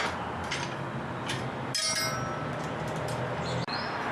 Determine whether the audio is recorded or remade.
recorded